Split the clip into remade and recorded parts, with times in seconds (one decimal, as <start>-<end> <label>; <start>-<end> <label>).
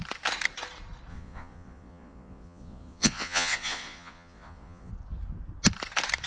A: 0.0-1.1 recorded; 1.1-4.9 remade; 4.9-6.3 recorded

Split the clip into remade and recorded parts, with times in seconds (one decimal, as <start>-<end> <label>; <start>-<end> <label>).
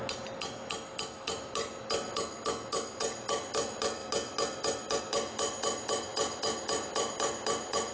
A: 0.0-6.1 recorded; 6.1-7.1 remade; 7.1-7.9 recorded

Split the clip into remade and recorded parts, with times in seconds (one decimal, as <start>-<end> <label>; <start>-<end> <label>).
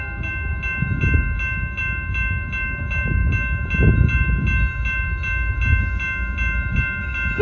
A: 0.0-7.4 recorded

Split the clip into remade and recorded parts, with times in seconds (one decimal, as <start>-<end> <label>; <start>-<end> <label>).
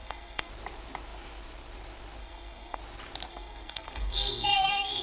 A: 0.0-0.5 remade; 0.5-2.2 recorded; 2.2-2.8 remade; 2.8-3.3 recorded; 3.3-5.0 remade